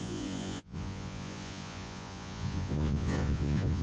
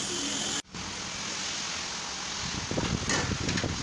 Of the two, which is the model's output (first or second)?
first